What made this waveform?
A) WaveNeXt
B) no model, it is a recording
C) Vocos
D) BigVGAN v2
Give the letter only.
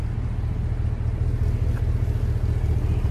D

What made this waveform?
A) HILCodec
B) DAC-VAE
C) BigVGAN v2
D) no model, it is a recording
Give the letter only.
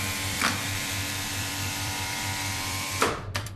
C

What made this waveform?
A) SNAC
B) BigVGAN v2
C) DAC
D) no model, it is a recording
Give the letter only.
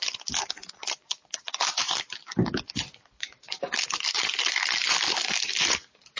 B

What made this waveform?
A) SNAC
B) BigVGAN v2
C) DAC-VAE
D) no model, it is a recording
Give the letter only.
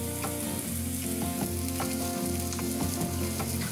D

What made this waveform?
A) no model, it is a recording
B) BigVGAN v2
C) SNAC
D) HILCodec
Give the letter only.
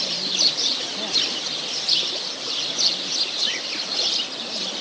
B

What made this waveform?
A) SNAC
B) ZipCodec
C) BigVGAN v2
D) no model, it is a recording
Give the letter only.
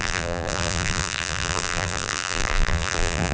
C